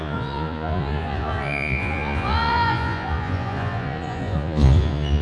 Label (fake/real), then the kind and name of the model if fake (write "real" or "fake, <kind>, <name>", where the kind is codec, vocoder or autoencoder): fake, vocoder, Vocos